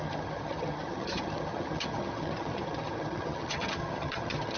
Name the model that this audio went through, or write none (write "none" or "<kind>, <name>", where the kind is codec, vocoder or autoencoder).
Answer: vocoder, HiFi-GAN